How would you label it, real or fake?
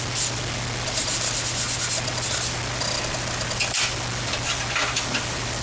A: fake